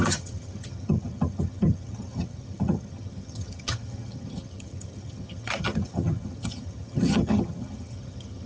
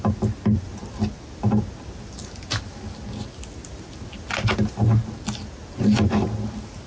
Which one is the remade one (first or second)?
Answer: first